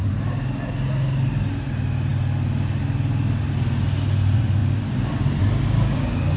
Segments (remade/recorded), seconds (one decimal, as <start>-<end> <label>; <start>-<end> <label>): 0.0-6.4 recorded

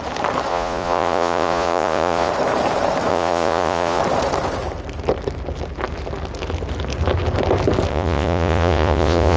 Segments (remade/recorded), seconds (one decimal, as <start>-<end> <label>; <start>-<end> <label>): 0.0-0.5 recorded; 0.5-2.3 remade; 2.3-3.1 recorded; 3.1-4.0 remade; 4.0-7.9 recorded; 7.9-9.4 remade

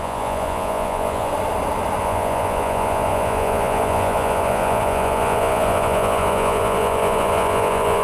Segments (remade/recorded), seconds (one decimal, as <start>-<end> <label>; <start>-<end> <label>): 0.0-1.3 remade; 1.3-2.0 recorded; 2.0-8.0 remade

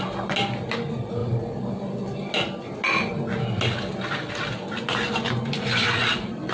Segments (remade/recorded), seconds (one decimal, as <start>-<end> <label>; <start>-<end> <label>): 0.0-6.5 recorded

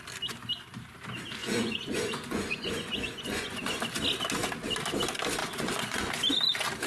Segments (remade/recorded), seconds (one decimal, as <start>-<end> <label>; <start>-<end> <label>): 0.0-1.4 recorded; 1.4-3.8 remade; 3.8-5.4 recorded; 5.4-6.1 remade; 6.1-6.9 recorded